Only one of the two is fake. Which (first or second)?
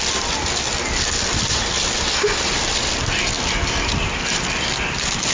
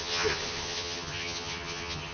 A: second